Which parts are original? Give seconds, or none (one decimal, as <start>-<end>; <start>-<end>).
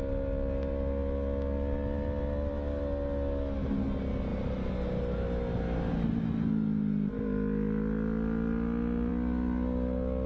0.0-10.3